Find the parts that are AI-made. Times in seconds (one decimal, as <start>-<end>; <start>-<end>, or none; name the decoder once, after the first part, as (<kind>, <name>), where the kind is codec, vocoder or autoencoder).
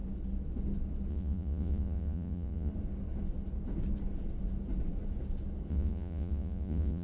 1.1-2.7 (vocoder, Vocos); 5.7-7.0